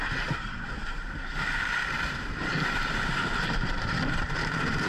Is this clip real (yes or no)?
no